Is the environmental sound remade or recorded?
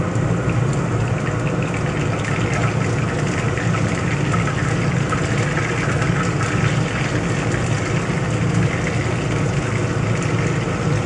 recorded